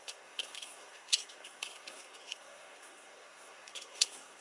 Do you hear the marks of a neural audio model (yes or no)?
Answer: yes